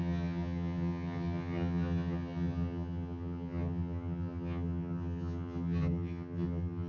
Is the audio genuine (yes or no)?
no